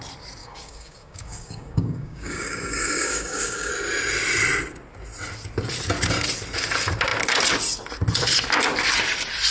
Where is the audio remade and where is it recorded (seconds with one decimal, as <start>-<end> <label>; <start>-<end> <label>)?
0.0-0.4 recorded; 0.4-3.7 remade; 3.7-9.5 recorded

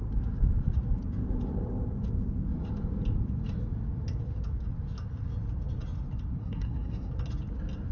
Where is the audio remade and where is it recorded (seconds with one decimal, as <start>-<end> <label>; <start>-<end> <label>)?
0.0-6.4 recorded; 6.4-7.1 remade; 7.1-7.9 recorded